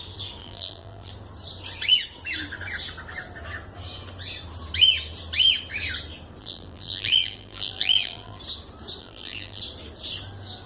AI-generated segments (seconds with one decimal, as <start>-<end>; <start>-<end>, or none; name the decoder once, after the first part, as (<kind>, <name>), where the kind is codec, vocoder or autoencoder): 0.4-1.1 (vocoder, BigVGAN v2); 6.4-8.4; 9.0-9.6